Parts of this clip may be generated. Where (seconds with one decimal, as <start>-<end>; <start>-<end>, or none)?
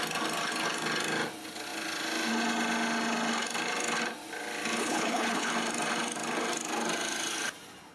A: 4.8-5.5